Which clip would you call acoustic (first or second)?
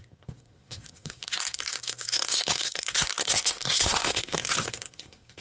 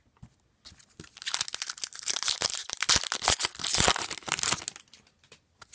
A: second